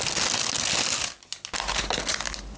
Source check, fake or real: real